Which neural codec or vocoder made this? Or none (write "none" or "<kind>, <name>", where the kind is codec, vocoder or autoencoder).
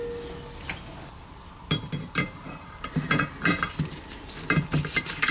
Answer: none